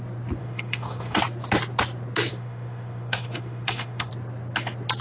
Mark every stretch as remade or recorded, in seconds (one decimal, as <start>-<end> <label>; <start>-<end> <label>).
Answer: 0.0-0.4 recorded; 0.4-1.2 remade; 1.2-2.3 recorded; 2.3-4.1 remade; 4.1-5.0 recorded